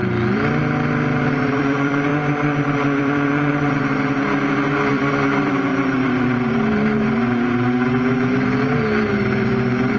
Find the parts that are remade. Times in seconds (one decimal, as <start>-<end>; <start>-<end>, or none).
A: 0.0-0.6; 1.2-2.1; 3.0-3.5; 4.9-5.7; 9.2-10.0